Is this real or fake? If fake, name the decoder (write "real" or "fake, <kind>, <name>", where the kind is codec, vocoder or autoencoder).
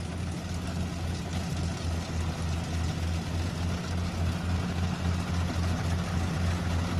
real